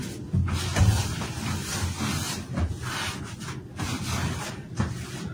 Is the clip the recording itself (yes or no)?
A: yes